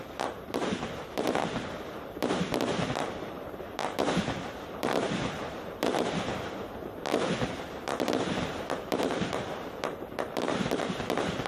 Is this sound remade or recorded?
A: remade